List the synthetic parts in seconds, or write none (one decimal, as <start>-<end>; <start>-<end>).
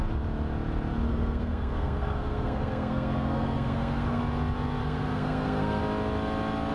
1.1-4.2; 4.8-5.8